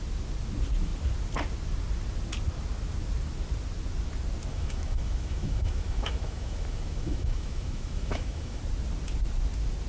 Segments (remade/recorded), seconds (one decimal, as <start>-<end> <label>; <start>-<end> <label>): 0.0-4.5 recorded; 4.5-8.6 remade; 8.6-9.9 recorded